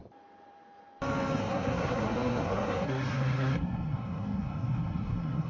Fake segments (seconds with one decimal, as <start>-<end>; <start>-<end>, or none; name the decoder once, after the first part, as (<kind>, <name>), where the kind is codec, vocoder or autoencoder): 1.4-5.5 (codec, SNAC)